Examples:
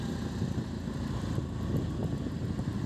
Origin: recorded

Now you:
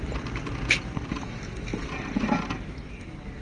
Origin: recorded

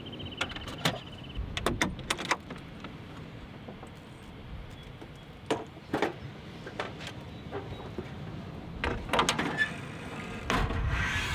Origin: recorded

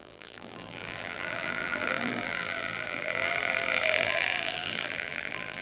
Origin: remade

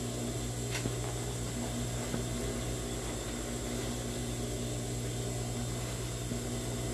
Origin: recorded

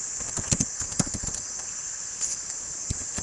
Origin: remade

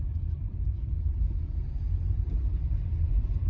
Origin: remade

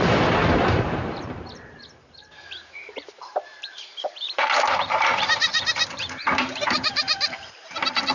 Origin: remade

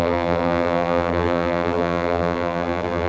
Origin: remade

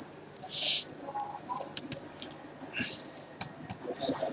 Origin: recorded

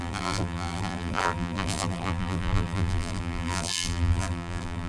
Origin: remade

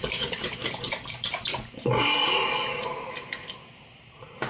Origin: recorded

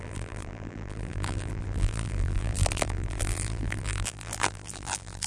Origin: remade